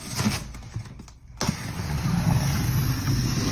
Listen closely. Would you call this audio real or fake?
real